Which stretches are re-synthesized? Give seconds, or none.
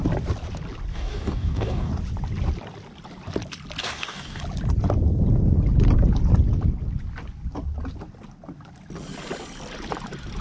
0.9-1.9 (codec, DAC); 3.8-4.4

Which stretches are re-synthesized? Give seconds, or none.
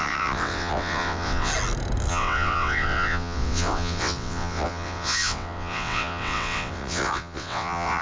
0.0-1.5 (vocoder, WaveNeXt); 2.1-8.0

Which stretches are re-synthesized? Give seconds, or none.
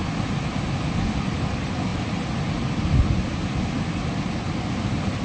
none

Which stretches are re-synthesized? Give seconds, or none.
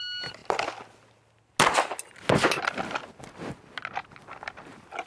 none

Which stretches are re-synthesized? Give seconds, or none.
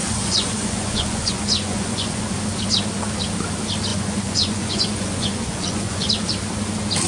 0.0-2.3 (vocoder, Vocos); 3.9-6.1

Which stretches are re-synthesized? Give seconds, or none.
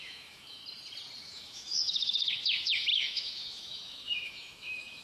0.0-0.6 (autoencoder, DAC-VAE); 1.2-5.0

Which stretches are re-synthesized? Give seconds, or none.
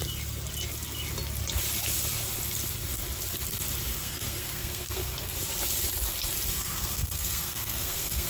3.9-5.3 (codec, SNAC); 6.5-8.3